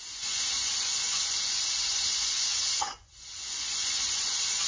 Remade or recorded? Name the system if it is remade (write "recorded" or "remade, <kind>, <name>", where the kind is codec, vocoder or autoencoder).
remade, vocoder, Vocos